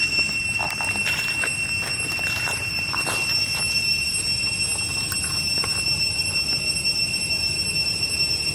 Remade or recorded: recorded